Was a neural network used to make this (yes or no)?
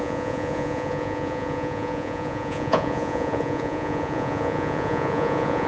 yes